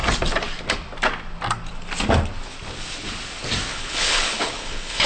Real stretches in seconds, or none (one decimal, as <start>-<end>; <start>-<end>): 0.0-3.7